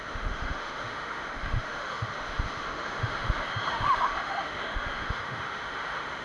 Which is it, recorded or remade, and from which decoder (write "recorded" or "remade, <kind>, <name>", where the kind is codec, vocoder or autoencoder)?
remade, autoencoder, DAC-VAE